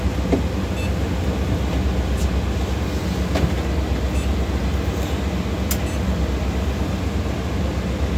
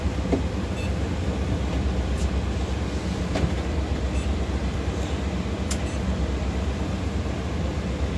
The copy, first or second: second